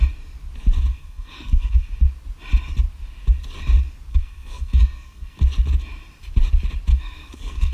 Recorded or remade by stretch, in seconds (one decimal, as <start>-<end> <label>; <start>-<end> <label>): 0.0-0.9 recorded; 0.9-1.9 remade; 1.9-4.1 recorded; 4.1-5.4 remade; 5.4-6.9 recorded; 6.9-7.7 remade